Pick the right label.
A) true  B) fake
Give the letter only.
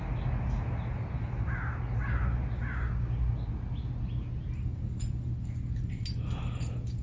A